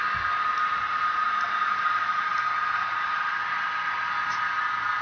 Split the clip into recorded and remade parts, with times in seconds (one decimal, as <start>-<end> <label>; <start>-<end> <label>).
0.0-5.0 recorded